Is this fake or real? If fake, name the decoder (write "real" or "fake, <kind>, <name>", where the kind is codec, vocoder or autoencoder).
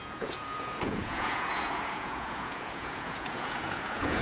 fake, vocoder, Vocos